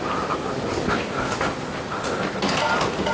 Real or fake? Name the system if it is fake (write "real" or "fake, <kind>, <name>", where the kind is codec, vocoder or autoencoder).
real